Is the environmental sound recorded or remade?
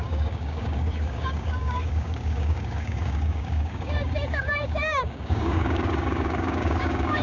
remade